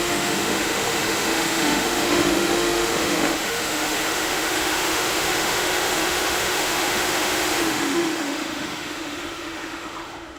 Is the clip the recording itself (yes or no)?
no